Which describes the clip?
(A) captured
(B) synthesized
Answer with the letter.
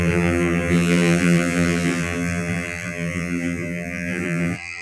B